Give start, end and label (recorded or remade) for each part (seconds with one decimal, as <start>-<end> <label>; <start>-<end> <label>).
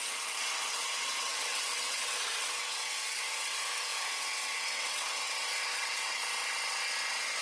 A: 0.0-6.2 remade; 6.2-7.4 recorded